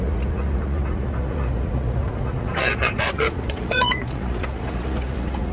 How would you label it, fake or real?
fake